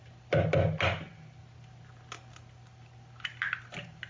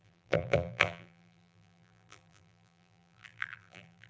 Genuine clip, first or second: first